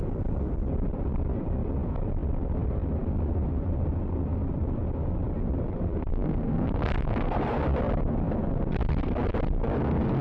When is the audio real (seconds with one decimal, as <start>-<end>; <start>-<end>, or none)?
0.0-6.1; 7.4-10.2